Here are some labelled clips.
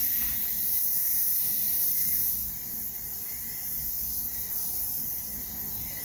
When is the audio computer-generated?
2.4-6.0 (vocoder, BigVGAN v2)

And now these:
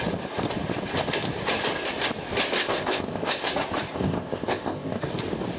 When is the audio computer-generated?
2.6-3.5 (codec, ZipCodec); 3.9-5.0

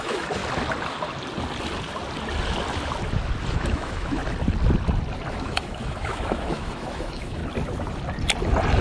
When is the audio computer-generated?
0.0-0.4 (autoencoder, DAC-VAE); 3.5-4.2; 5.3-7.4

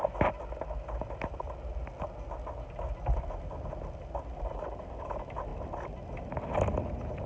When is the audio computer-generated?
none

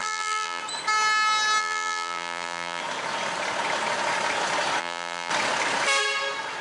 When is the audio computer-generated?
0.0-0.6 (vocoder, BigVGAN v2); 1.6-2.8; 4.8-5.3